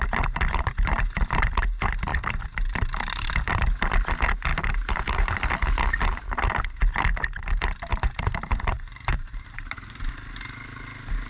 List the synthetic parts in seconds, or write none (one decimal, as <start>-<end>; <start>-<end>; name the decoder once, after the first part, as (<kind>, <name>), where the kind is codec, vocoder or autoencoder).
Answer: 2.1-3.3 (vocoder, BigVGAN v2); 4.5-5.3; 7.9-10.1